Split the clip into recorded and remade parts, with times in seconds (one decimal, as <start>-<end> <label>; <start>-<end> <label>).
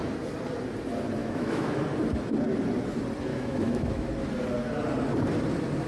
0.0-1.2 recorded; 1.2-1.8 remade; 1.8-3.3 recorded; 3.3-4.1 remade; 4.1-5.9 recorded